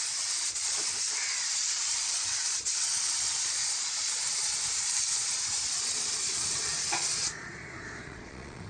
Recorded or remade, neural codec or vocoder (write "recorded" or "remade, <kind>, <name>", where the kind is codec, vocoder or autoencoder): remade, vocoder, Vocos